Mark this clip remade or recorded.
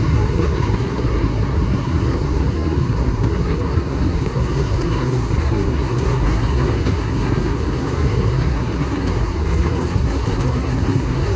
remade